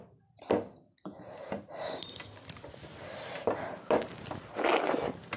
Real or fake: real